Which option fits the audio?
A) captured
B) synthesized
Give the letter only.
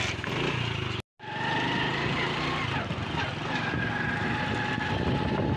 A